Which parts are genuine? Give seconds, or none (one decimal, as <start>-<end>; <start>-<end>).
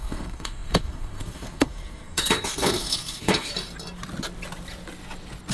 3.5-5.5